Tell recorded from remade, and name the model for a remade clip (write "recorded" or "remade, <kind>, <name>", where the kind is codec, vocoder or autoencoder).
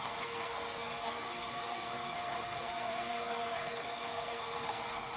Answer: remade, codec, SNAC